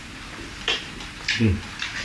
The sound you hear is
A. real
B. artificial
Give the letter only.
A